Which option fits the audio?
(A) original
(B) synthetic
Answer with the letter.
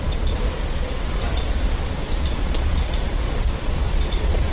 B